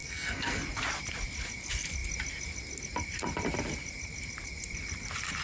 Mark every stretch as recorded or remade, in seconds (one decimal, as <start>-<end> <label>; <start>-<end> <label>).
0.0-0.6 remade; 0.6-5.4 recorded